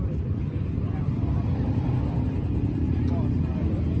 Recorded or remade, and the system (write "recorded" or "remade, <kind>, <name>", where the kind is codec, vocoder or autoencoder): remade, vocoder, BigVGAN v2